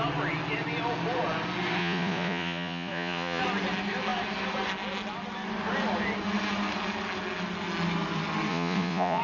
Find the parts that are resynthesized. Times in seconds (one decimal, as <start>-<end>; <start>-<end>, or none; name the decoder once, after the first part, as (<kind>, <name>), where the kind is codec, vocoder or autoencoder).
1.8-3.4 (vocoder, Vocos); 8.5-9.2